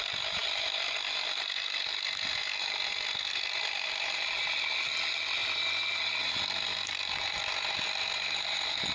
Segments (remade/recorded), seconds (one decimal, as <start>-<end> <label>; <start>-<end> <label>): 0.0-8.9 recorded